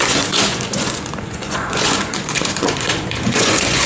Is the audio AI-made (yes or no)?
yes